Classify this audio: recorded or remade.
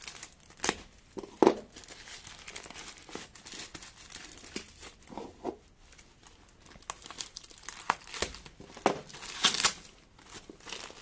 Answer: recorded